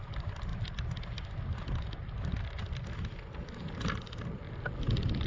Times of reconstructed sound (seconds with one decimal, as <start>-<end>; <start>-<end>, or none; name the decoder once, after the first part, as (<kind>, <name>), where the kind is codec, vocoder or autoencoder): none